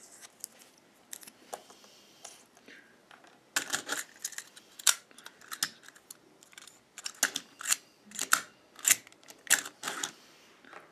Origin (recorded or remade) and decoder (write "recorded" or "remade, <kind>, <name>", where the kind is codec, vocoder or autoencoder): recorded